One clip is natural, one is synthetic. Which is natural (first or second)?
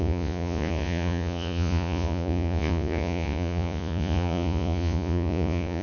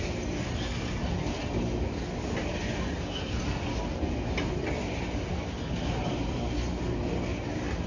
second